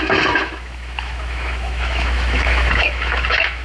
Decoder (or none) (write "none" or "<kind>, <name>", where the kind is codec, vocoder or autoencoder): autoencoder, DAC-VAE